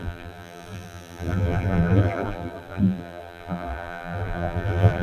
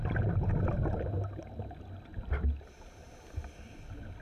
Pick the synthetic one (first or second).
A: first